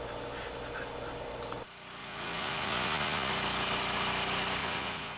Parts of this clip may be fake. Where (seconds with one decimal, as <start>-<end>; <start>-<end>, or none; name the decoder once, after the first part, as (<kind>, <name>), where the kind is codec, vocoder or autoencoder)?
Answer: 2.0-3.3 (vocoder, Vocos); 4.6-5.2